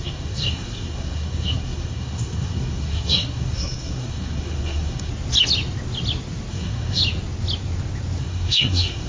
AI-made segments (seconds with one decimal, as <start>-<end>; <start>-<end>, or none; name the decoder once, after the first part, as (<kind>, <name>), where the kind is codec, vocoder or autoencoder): 0.0-5.1 (codec, SNAC); 6.5-7.0; 8.2-9.1